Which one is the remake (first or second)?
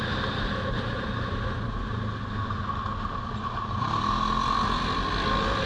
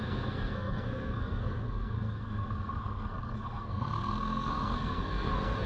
second